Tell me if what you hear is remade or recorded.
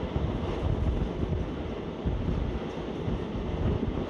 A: recorded